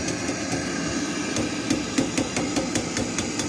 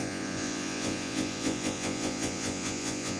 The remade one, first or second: second